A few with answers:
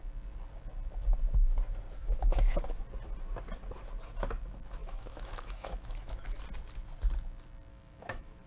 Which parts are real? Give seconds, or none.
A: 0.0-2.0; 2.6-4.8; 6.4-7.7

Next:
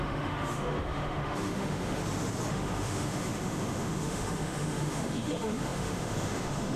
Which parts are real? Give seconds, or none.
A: 2.0-2.5